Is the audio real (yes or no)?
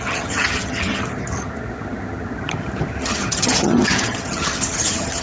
no